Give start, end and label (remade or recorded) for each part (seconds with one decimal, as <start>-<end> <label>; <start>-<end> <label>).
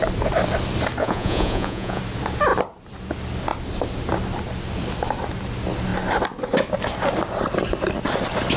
0.0-1.0 recorded; 1.0-2.0 remade; 2.0-8.6 recorded